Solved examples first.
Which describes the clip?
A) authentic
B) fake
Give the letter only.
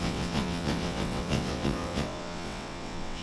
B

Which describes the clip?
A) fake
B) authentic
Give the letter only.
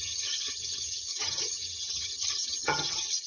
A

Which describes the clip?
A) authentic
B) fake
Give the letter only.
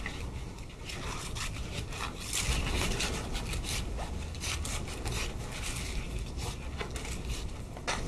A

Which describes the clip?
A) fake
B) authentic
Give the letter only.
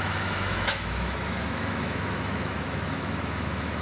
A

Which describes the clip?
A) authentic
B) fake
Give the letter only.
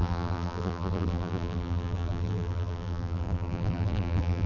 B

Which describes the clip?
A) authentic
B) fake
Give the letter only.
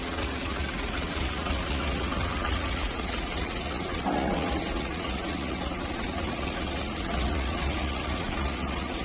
B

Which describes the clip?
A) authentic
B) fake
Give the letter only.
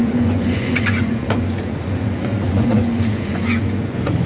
B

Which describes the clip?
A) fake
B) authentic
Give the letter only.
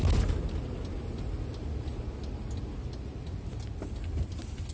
B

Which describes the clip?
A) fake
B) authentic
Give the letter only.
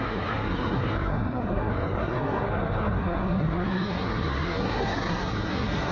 A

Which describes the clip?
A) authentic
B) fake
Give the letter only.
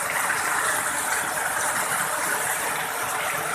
A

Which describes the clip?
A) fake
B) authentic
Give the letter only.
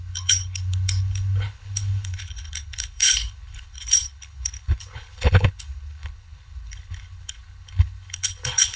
A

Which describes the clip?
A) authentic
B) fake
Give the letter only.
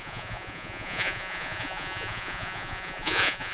B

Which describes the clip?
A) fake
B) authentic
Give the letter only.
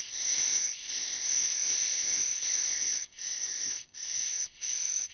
A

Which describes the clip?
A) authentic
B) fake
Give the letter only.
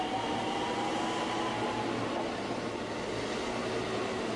A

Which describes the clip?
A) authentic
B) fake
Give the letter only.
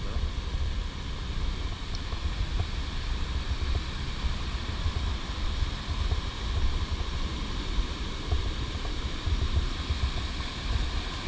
A